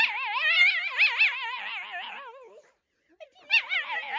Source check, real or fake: real